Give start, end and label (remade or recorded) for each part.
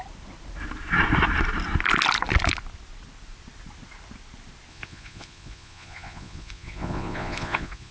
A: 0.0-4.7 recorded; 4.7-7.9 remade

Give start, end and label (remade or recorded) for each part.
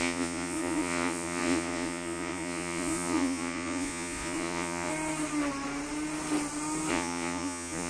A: 0.0-4.9 remade; 4.9-6.9 recorded; 6.9-7.9 remade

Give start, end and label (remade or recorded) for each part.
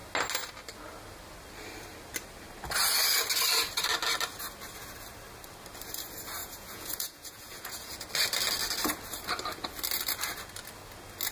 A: 0.0-6.4 recorded; 6.4-7.9 remade; 7.9-11.3 recorded